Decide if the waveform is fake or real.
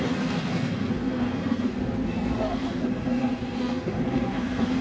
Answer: fake